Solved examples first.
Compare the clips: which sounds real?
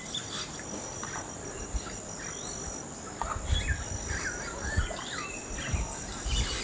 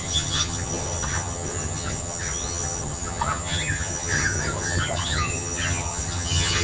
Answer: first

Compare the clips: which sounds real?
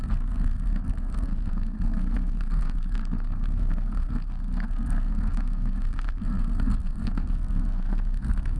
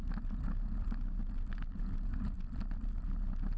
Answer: second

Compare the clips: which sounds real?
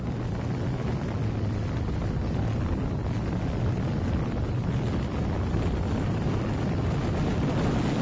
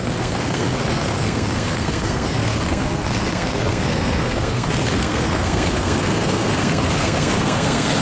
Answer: first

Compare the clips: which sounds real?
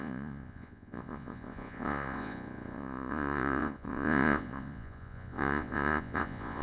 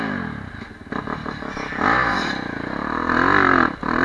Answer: second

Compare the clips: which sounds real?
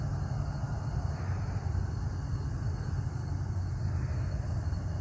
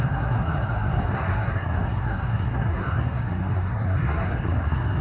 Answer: first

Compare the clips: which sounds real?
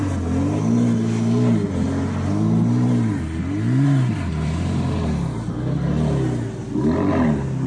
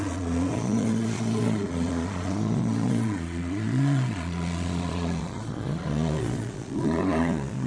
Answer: first